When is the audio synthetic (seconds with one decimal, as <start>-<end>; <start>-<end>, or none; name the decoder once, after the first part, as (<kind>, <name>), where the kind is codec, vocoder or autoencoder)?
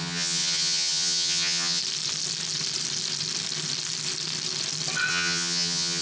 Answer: 0.0-1.8 (vocoder, HiFi-GAN); 5.1-6.0